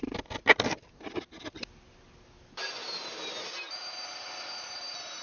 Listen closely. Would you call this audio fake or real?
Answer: real